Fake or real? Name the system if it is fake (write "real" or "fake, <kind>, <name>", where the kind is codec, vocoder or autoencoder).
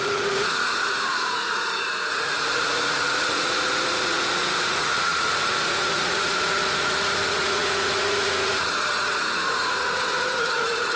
fake, vocoder, Vocos